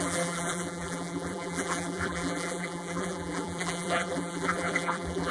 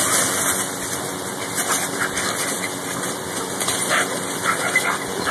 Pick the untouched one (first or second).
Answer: second